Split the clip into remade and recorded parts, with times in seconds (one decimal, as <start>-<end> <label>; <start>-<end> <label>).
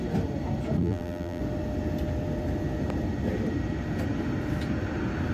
0.0-0.8 recorded; 0.8-1.4 remade; 1.4-5.3 recorded